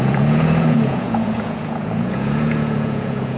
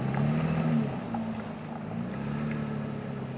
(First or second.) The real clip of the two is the second